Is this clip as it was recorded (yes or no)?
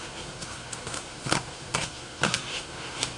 no